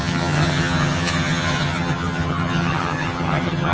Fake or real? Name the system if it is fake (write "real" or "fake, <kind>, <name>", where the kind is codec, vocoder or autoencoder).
fake, vocoder, HiFi-GAN